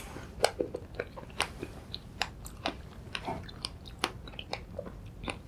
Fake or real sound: fake